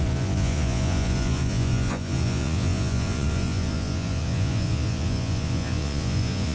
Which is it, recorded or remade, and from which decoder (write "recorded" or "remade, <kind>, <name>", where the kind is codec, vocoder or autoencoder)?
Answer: remade, vocoder, Vocos